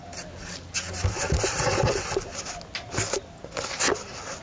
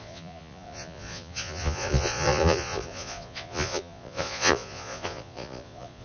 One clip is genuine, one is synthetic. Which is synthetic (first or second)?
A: second